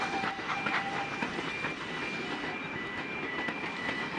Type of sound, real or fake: real